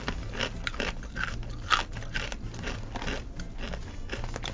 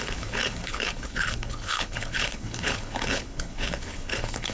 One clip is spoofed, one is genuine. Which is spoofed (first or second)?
second